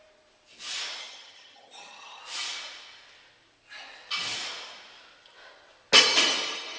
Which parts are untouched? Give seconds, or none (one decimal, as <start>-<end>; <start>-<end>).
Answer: 0.0-1.0; 2.2-6.8